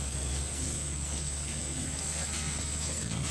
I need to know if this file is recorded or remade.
remade